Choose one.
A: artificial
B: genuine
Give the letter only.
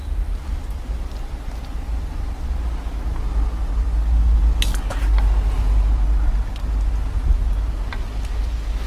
B